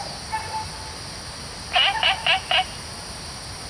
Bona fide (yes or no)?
yes